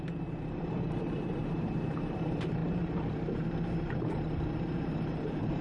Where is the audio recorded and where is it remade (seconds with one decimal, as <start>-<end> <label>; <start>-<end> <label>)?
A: 0.0-5.6 remade